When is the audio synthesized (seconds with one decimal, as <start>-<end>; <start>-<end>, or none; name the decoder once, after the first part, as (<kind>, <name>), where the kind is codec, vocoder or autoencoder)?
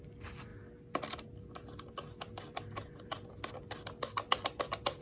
none